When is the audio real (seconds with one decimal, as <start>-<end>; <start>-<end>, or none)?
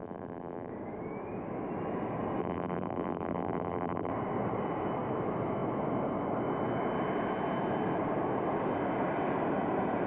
0.7-2.4; 4.1-10.1